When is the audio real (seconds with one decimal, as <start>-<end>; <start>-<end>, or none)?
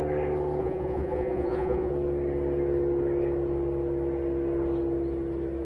0.0-0.6; 1.9-5.6